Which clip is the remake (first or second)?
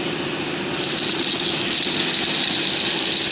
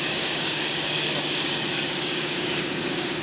second